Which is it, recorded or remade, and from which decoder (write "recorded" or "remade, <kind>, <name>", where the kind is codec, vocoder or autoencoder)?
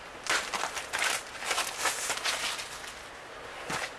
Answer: recorded